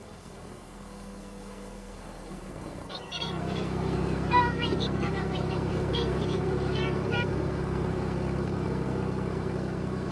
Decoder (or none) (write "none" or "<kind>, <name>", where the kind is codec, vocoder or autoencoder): codec, SNAC